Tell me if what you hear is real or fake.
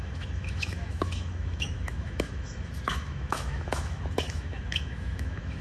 fake